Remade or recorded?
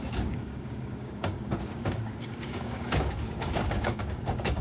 remade